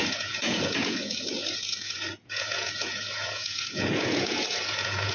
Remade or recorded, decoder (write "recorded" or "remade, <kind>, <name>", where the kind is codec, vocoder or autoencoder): remade, vocoder, Vocos